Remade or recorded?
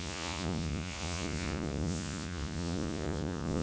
remade